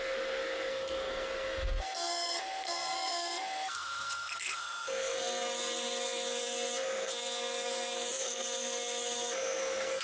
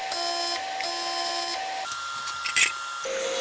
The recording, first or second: second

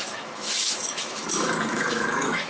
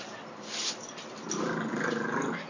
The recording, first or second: second